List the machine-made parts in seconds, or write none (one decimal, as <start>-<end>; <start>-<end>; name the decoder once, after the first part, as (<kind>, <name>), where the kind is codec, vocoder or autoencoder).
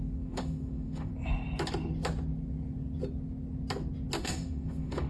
0.0-1.1 (autoencoder, DAC-VAE); 4.2-5.1